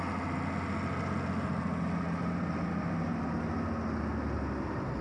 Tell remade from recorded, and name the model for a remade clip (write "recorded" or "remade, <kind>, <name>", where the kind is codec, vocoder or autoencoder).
recorded